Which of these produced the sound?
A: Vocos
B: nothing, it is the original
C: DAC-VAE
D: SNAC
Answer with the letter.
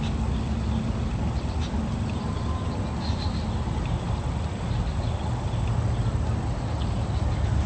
B